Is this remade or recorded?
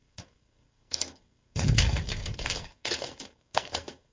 remade